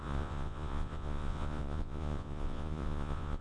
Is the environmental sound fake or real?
fake